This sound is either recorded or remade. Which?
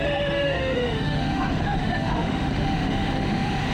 remade